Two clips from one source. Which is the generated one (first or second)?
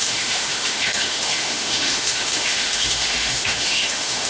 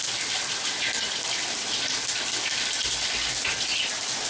first